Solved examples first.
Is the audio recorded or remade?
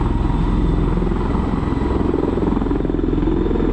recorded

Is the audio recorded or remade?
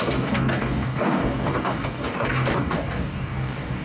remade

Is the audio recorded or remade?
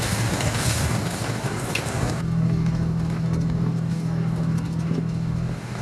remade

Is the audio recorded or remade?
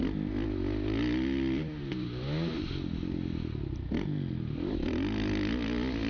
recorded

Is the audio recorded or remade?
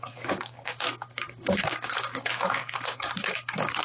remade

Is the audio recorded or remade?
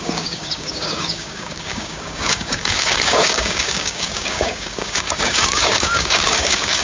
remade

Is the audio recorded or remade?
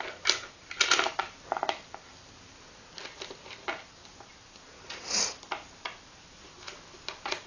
recorded